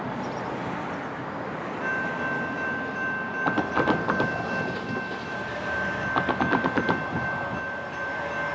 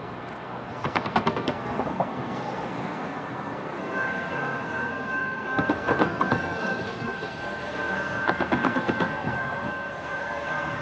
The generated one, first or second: second